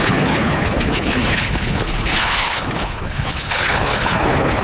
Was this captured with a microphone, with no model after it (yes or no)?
no